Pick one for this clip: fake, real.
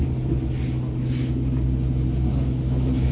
real